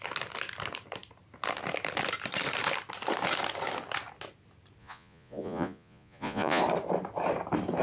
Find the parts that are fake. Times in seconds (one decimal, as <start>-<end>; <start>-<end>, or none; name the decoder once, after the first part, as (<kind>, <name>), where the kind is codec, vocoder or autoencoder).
4.8-6.6 (vocoder, Vocos)

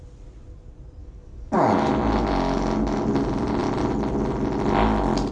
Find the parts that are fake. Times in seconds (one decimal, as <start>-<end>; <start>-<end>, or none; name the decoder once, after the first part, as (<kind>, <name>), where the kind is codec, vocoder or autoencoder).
1.0-1.9 (codec, DAC)

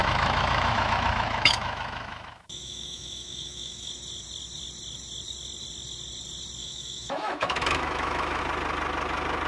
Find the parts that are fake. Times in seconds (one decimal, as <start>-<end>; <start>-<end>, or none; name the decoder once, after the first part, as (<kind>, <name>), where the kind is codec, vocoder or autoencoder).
0.0-3.9 (autoencoder, DAC-VAE); 6.6-8.4

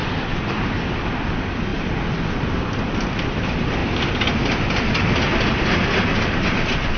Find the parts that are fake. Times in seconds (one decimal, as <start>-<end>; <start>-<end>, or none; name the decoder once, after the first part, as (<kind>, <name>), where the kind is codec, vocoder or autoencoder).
3.8-5.0 (vocoder, BigVGAN v2)

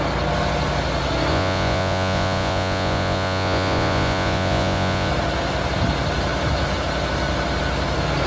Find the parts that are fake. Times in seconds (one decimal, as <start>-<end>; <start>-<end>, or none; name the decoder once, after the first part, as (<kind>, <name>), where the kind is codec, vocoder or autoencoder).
1.3-5.1 (vocoder, Vocos)

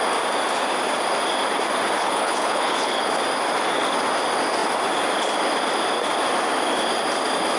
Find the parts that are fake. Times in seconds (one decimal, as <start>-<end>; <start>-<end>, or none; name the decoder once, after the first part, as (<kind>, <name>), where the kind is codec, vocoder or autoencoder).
2.0-3.1 (codec, HILCodec)